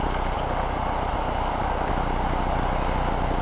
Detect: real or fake real